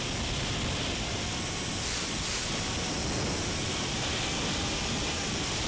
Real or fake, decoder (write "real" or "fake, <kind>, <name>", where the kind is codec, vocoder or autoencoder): real